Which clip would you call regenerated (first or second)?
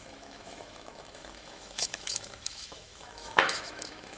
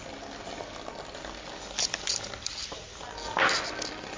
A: first